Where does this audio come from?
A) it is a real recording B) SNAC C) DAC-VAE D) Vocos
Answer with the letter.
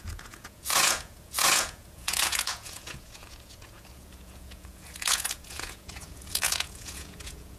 D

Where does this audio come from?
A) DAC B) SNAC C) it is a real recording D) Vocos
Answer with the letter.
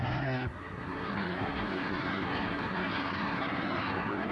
B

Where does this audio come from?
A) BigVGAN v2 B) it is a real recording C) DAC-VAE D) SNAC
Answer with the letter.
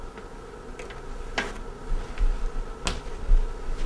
B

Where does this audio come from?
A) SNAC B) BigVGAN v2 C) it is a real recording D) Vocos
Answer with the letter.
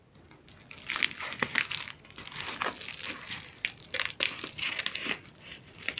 C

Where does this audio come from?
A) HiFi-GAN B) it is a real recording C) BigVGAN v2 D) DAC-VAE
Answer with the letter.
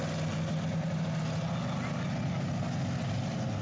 B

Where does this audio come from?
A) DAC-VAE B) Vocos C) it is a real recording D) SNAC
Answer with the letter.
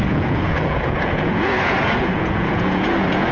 B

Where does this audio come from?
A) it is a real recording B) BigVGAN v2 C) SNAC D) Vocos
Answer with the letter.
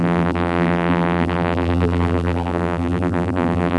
B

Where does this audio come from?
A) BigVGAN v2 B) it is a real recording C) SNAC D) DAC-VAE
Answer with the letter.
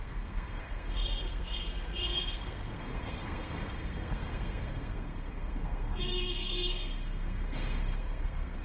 C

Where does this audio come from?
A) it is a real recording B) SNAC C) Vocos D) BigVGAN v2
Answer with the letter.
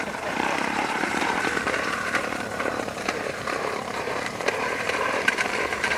D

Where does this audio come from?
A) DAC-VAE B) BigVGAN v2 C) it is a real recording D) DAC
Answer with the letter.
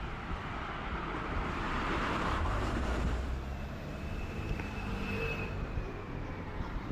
B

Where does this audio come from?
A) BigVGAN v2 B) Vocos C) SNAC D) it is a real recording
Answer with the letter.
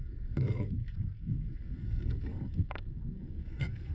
C